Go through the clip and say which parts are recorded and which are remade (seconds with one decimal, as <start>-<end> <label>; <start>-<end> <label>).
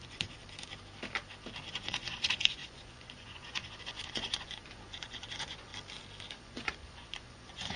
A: 0.0-0.4 remade; 0.4-1.7 recorded; 1.7-5.7 remade; 5.7-6.3 recorded; 6.3-7.8 remade